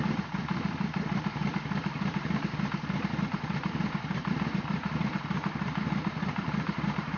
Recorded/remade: remade